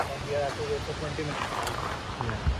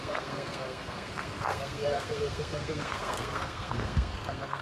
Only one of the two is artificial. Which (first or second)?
second